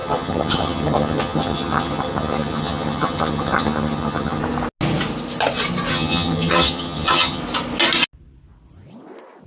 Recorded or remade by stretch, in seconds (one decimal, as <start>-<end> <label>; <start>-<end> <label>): 0.0-4.4 remade; 4.4-5.9 recorded; 5.9-7.4 remade; 7.4-9.5 recorded